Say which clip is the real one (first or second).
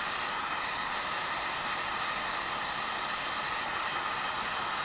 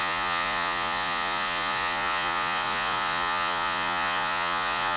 first